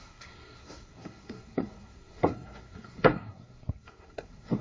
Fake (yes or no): yes